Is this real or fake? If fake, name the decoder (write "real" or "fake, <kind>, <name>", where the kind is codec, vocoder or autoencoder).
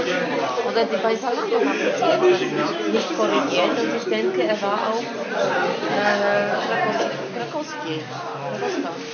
real